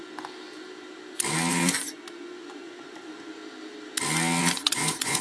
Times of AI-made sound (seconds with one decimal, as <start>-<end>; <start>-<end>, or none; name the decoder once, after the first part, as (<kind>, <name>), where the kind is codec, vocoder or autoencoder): 1.5-3.4 (vocoder, Vocos); 4.4-5.2